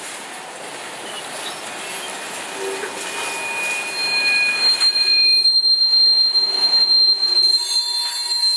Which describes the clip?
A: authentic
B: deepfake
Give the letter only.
A